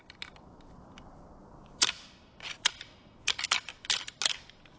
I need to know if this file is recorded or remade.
recorded